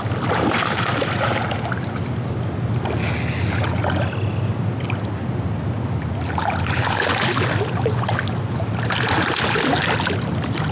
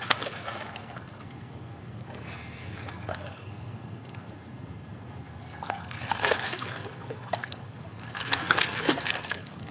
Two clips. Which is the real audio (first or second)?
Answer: first